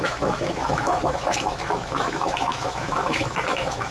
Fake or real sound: fake